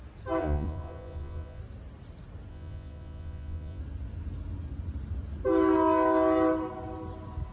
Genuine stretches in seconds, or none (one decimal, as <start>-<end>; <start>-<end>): 0.0-0.4; 1.6-2.5; 3.8-7.5